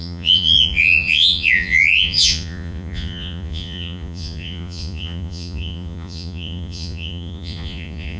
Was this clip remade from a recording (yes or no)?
yes